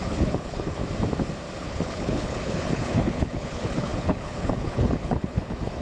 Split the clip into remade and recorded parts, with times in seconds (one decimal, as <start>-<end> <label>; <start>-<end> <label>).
0.0-0.8 remade; 0.8-1.6 recorded; 1.6-5.8 remade